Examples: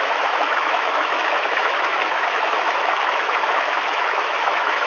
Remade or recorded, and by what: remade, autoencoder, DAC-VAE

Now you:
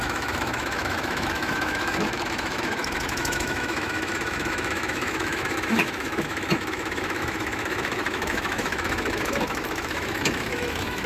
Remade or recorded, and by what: remade, autoencoder, DAC-VAE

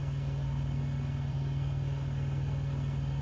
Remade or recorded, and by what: remade, codec, SNAC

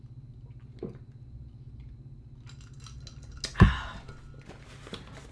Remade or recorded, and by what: recorded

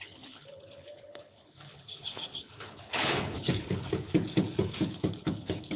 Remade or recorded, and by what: remade, codec, HILCodec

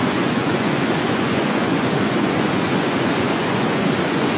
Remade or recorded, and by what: remade, vocoder, Vocos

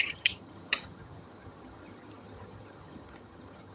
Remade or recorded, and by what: remade, vocoder, HiFi-GAN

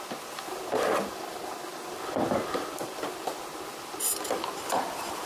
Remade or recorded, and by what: recorded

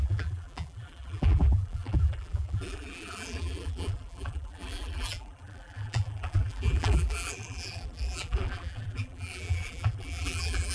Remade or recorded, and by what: remade, vocoder, BigVGAN v2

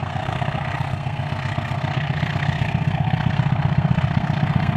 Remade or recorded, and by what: remade, codec, SNAC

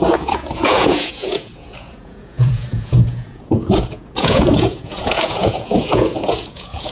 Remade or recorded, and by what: remade, vocoder, Vocos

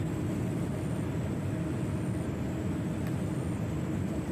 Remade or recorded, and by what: recorded